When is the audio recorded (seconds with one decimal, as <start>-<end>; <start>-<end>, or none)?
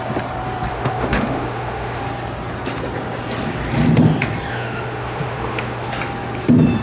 0.0-0.7; 2.0-4.5; 5.9-6.8